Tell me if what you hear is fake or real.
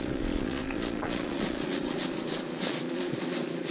fake